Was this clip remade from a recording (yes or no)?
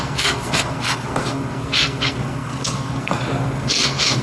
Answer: yes